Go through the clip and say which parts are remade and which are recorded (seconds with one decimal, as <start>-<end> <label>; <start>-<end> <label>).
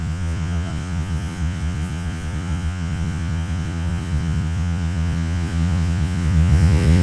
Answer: 0.0-7.0 remade